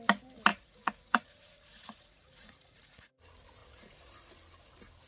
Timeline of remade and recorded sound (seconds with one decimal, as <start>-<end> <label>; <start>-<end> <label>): 0.0-0.5 recorded; 0.5-3.1 remade; 3.1-3.6 recorded; 3.6-4.3 remade; 4.3-5.1 recorded